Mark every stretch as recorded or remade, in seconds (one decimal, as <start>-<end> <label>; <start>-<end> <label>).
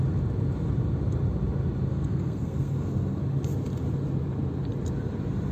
0.0-1.9 recorded; 1.9-3.2 remade; 3.2-5.5 recorded